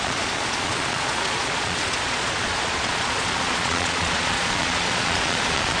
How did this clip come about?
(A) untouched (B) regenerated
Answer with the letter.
B